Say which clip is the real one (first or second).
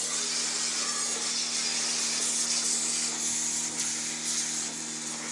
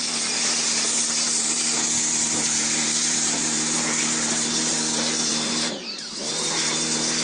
first